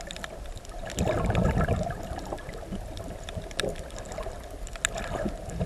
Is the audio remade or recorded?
recorded